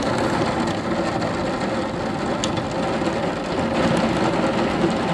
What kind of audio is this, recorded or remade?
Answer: recorded